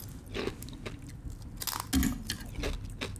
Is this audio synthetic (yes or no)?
no